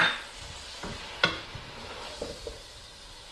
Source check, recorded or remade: recorded